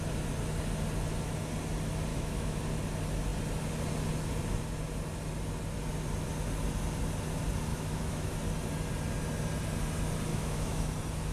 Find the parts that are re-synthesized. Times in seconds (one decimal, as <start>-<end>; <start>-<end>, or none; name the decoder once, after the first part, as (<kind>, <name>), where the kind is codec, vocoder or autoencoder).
2.1-2.6 (autoencoder, DAC-VAE); 7.7-8.4; 10.3-10.9